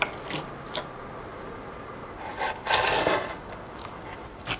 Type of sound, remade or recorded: recorded